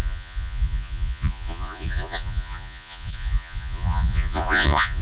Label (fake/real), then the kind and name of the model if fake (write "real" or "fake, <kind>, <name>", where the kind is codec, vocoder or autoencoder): fake, vocoder, Vocos